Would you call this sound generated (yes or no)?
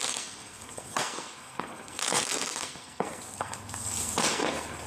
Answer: yes